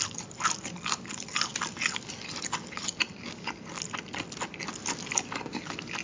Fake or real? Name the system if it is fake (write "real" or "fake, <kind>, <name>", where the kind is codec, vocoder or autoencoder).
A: real